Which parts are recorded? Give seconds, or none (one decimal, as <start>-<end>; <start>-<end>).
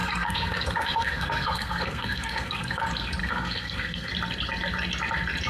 2.8-3.2; 4.1-5.5